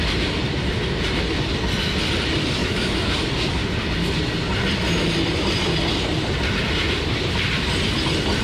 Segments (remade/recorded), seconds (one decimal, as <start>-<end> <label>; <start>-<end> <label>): 0.0-2.6 recorded; 2.6-3.1 remade; 3.1-8.4 recorded